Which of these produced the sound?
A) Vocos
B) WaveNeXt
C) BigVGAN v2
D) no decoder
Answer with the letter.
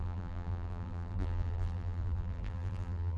C